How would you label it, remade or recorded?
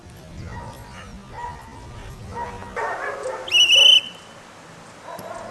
recorded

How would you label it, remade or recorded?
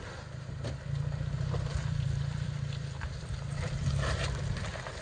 remade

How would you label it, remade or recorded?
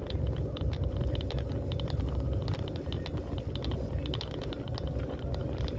recorded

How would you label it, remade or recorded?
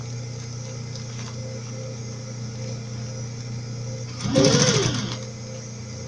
recorded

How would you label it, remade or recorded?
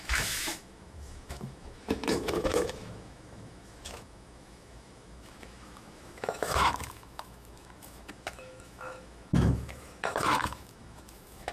remade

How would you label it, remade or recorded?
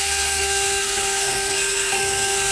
remade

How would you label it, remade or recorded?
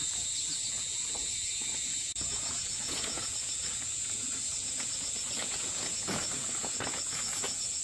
remade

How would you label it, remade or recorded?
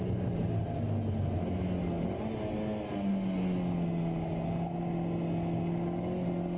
recorded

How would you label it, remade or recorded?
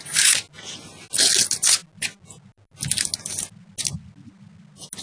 recorded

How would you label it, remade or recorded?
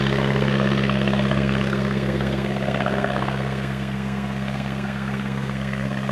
remade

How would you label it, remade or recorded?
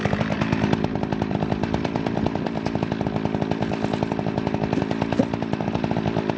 remade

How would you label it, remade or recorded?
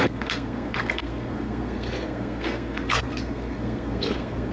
remade